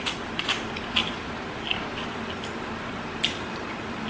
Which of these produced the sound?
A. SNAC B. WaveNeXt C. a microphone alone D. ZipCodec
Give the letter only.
C